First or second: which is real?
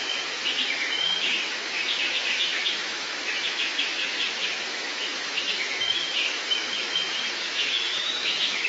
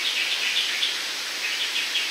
second